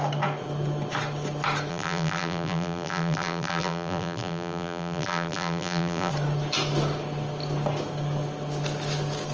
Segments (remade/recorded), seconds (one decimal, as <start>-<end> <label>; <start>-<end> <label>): 0.0-1.7 recorded; 1.7-6.1 remade; 6.1-9.3 recorded